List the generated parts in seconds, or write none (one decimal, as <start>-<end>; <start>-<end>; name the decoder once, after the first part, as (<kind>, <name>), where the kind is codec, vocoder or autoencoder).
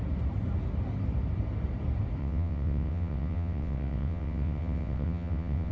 2.2-5.7 (vocoder, WaveNeXt)